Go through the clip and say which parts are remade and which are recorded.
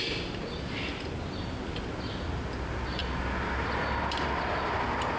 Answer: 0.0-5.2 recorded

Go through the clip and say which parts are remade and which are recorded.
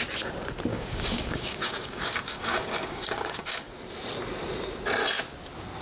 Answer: 0.0-0.7 recorded; 0.7-3.4 remade; 3.4-5.8 recorded